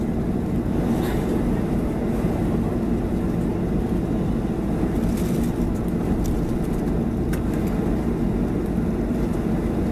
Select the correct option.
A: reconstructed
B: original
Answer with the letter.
B